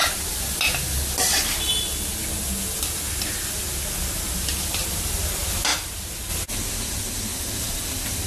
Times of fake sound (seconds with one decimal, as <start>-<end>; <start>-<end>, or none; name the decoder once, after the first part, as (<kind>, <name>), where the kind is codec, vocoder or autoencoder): 5.7-6.3 (vocoder, BigVGAN v2); 7.3-7.8